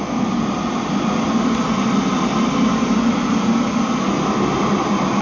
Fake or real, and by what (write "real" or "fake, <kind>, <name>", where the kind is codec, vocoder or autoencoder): real